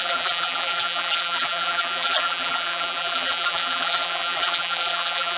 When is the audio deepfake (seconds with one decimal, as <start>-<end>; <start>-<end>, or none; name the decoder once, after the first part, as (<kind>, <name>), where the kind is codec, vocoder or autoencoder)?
0.0-5.4 (vocoder, BigVGAN v2)